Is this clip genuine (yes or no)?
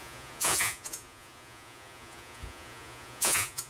no